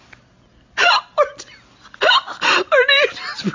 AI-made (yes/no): no